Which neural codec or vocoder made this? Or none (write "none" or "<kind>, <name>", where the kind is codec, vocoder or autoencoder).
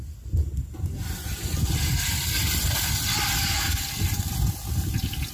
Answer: none